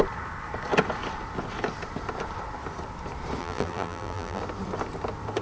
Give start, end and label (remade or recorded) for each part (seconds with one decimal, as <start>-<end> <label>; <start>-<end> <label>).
0.0-3.4 recorded; 3.4-4.4 remade; 4.4-5.4 recorded